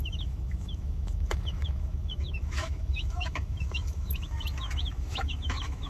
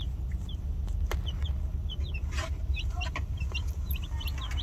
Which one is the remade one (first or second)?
first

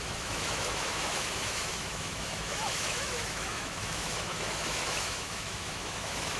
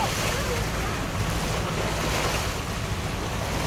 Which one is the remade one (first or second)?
first